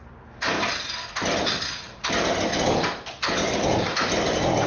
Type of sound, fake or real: real